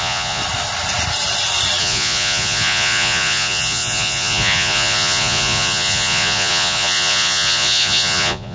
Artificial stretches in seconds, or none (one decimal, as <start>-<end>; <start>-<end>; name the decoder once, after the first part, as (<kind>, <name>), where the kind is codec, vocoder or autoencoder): 0.0-0.4 (vocoder, Vocos); 1.8-8.5